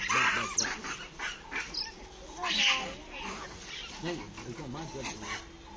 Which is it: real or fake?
real